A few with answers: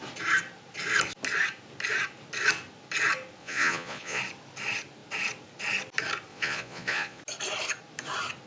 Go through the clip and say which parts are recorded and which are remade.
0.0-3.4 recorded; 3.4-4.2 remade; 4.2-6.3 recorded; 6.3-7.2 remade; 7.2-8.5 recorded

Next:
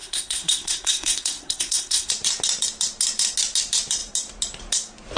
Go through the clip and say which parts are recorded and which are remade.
0.0-2.1 remade; 2.1-5.2 recorded

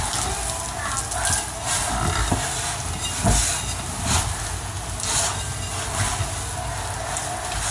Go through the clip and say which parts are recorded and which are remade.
0.0-7.7 recorded